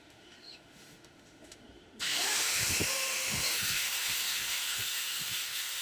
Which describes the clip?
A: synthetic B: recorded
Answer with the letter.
A